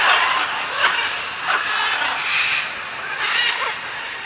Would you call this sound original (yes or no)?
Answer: yes